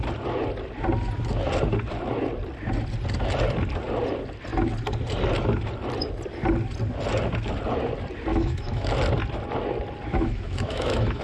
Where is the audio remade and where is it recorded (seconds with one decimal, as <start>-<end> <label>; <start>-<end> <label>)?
0.0-8.3 recorded; 8.3-8.9 remade; 8.9-10.1 recorded; 10.1-11.2 remade